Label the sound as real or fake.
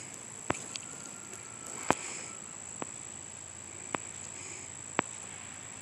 real